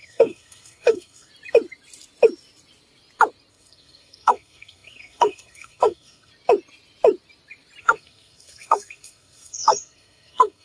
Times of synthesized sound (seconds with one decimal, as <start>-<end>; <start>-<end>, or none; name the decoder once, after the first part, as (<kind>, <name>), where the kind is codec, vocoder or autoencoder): 0.0-1.3 (codec, SNAC); 3.5-6.3; 7.8-10.6